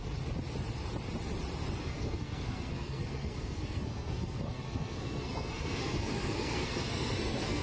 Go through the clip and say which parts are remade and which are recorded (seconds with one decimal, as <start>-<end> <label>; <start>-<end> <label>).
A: 0.0-1.8 recorded; 1.8-7.6 remade

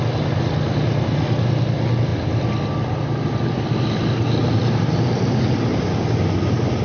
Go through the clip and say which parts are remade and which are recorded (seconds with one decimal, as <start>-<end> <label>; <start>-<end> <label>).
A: 0.0-6.8 recorded

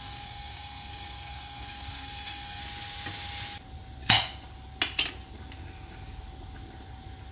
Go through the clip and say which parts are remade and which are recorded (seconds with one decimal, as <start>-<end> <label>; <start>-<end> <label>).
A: 0.0-2.6 remade; 2.6-7.3 recorded

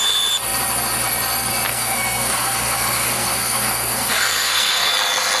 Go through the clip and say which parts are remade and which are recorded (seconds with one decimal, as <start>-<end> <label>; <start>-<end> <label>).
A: 0.0-1.7 recorded; 1.7-4.9 remade; 4.9-5.4 recorded